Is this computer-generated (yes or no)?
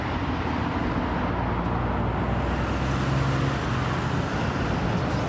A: no